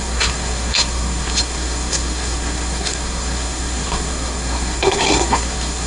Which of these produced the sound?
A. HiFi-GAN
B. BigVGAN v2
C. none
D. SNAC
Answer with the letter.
D